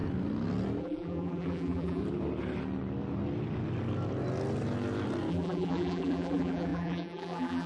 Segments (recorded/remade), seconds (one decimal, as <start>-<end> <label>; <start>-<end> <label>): 0.0-0.8 recorded; 0.8-2.0 remade; 2.0-5.3 recorded; 5.3-7.7 remade